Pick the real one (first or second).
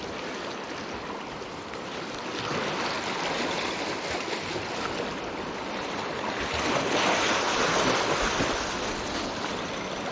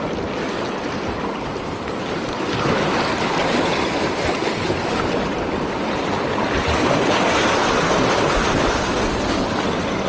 first